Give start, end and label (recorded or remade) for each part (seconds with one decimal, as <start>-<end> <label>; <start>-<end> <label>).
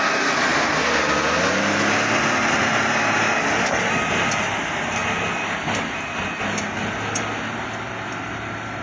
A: 0.0-8.8 recorded